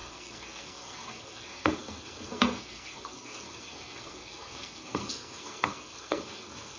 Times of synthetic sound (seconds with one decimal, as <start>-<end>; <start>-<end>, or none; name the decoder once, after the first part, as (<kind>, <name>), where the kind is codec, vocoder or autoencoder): 0.0-6.8 (codec, SNAC)